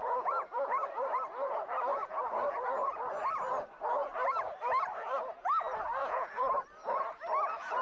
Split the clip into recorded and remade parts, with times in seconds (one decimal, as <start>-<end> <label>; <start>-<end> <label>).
0.0-1.0 remade; 1.0-1.9 recorded; 1.9-3.1 remade; 3.1-6.0 recorded; 6.0-6.5 remade; 6.5-7.8 recorded